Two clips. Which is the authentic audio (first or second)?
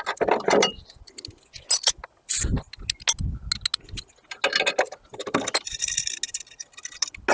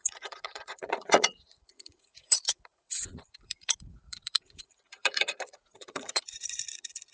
first